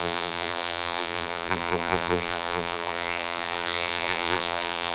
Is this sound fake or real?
fake